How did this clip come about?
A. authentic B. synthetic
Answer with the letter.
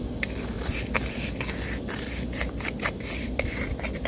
A